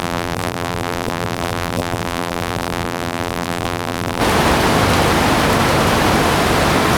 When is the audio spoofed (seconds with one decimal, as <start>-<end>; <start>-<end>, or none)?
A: 0.0-4.2